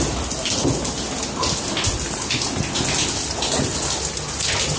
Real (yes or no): yes